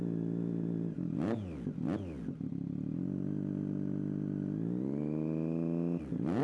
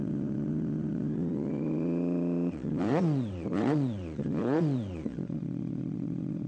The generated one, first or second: second